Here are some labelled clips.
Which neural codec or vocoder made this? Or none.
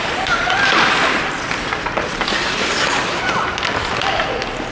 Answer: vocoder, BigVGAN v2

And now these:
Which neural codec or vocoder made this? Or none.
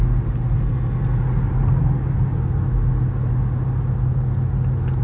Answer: none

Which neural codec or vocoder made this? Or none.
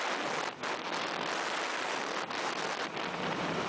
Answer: none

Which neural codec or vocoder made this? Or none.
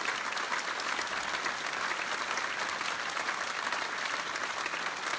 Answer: none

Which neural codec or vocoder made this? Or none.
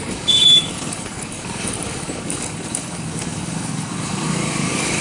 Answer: codec, DAC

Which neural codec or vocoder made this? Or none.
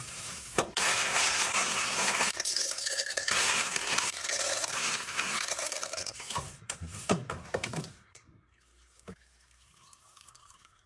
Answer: codec, SNAC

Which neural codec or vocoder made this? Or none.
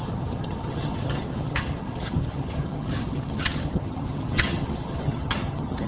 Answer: vocoder, HiFi-GAN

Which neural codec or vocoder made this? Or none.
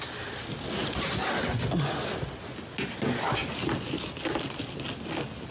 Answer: none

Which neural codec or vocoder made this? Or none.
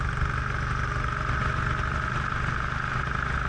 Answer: none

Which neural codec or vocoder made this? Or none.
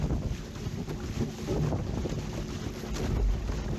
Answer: none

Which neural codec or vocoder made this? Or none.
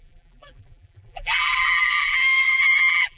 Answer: vocoder, BigVGAN v2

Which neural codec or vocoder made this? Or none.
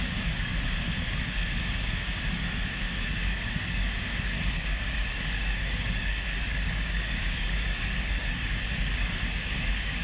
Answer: codec, DAC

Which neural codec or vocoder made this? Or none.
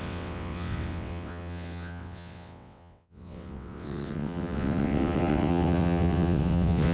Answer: vocoder, WaveNeXt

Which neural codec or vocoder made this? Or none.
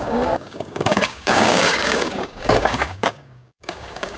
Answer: codec, DAC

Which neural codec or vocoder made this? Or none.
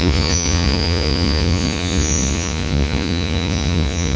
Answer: vocoder, Vocos